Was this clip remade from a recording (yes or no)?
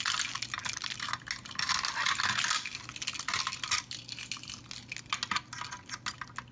no